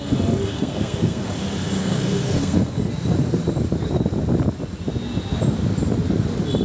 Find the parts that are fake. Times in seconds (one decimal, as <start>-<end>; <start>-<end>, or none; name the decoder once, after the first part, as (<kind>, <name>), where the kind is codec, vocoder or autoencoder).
0.5-1.3 (codec, SNAC); 1.8-2.9